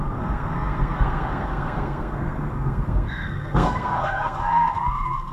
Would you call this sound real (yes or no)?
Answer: no